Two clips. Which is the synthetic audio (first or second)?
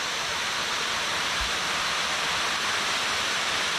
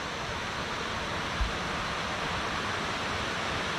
first